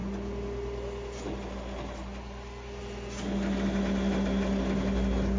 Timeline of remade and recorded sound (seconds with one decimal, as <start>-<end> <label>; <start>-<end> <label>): 0.0-5.4 recorded